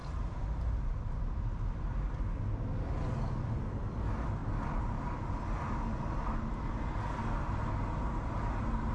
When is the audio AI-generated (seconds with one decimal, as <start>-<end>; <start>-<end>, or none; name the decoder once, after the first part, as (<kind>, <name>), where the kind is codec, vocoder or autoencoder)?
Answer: none